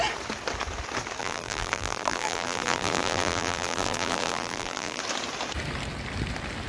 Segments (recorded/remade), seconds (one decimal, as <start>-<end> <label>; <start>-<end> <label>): 0.0-1.2 recorded; 1.2-5.0 remade; 5.0-6.7 recorded

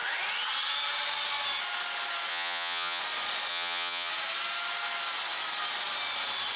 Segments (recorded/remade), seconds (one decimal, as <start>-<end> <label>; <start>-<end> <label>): 0.0-2.3 recorded; 2.3-3.0 remade; 3.0-3.5 recorded; 3.5-4.1 remade; 4.1-6.6 recorded

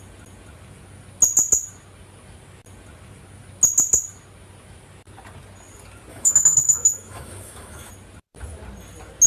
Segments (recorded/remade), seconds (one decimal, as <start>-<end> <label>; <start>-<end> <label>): 0.0-6.1 recorded; 6.1-7.9 remade; 7.9-9.3 recorded

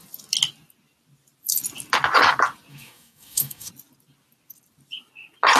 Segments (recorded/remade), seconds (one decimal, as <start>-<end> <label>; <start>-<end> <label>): 0.0-2.7 recorded; 2.7-3.7 remade; 3.7-5.6 recorded

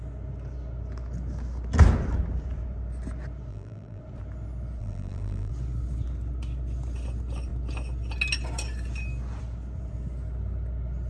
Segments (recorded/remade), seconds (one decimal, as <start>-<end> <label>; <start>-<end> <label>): 0.0-3.5 recorded; 3.5-4.0 remade; 4.0-4.8 recorded; 4.8-5.5 remade; 5.5-11.1 recorded

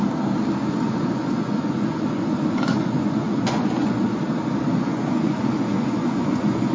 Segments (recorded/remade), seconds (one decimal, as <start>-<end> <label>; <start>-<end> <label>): 0.0-0.6 recorded; 0.6-4.2 remade; 4.2-4.7 recorded; 4.7-6.7 remade

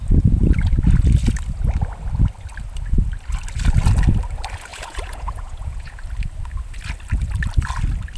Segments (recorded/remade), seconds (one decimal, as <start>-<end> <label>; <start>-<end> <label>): 0.0-4.7 recorded; 4.7-6.0 remade; 6.0-8.2 recorded

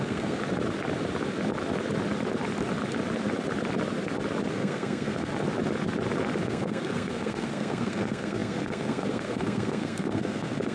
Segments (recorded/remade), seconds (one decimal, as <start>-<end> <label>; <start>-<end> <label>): 0.0-0.4 remade; 0.4-4.5 recorded; 4.5-5.3 remade; 5.3-6.4 recorded; 6.4-10.7 remade